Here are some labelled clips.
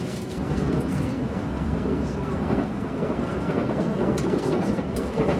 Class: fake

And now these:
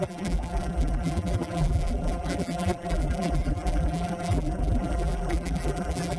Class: fake